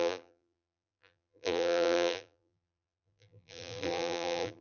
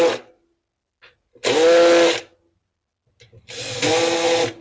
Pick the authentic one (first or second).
second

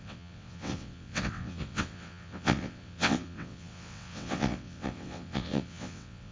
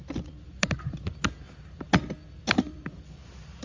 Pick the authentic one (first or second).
second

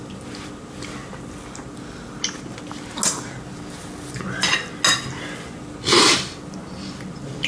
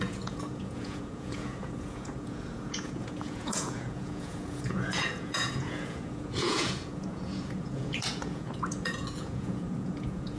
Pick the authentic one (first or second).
first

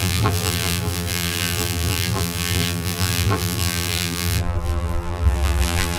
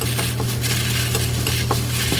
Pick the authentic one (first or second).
second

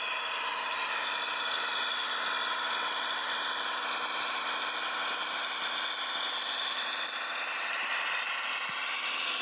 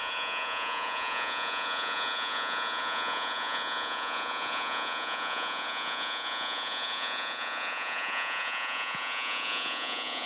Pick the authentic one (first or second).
first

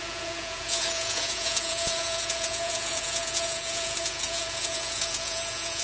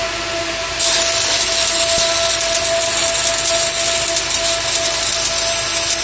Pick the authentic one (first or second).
second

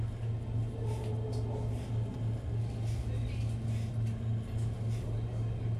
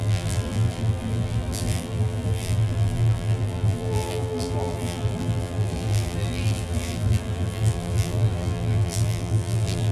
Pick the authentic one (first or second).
first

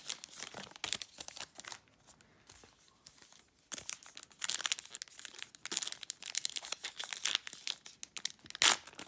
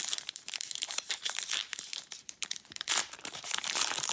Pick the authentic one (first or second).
first